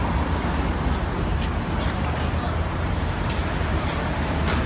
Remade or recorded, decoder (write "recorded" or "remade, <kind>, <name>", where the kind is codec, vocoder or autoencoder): remade, vocoder, BigVGAN v2